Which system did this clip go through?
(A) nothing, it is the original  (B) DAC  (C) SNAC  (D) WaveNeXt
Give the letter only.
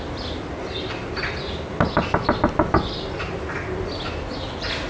A